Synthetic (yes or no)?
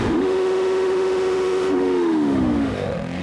yes